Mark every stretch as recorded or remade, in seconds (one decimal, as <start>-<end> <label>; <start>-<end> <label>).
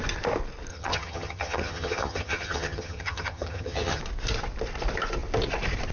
0.0-0.7 recorded; 0.7-4.0 remade; 4.0-5.9 recorded